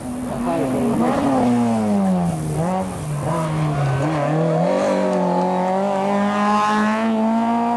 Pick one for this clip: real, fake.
real